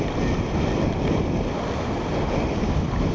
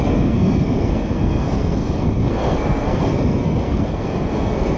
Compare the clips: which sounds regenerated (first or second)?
second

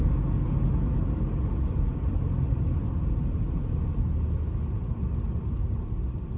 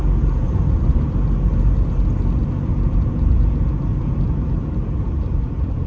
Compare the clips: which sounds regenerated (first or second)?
second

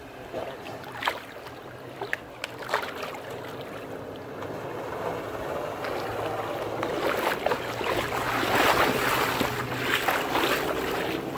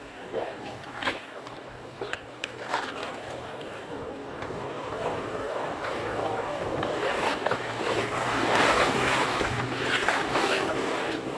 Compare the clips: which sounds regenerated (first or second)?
second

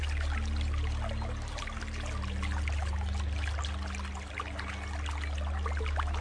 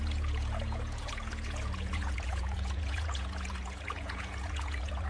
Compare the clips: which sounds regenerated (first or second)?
second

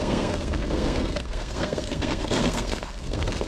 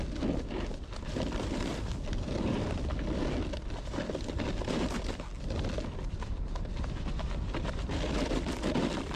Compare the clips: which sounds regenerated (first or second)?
first